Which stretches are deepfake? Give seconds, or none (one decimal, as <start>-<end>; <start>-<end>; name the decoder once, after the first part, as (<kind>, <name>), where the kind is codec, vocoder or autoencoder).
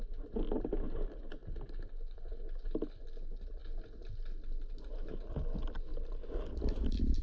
none